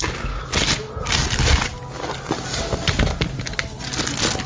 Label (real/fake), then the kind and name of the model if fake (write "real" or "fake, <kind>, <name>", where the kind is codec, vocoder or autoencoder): real